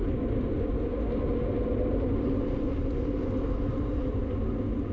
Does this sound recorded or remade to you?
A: recorded